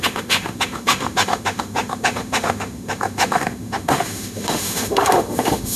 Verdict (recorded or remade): remade